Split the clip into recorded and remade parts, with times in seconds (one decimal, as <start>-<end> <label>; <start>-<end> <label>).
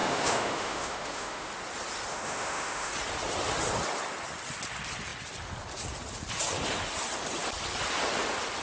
0.0-1.5 remade; 1.5-2.1 recorded; 2.1-2.9 remade; 2.9-8.6 recorded